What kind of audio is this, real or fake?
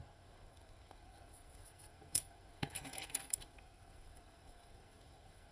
fake